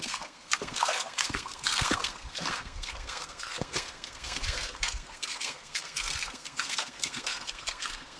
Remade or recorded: remade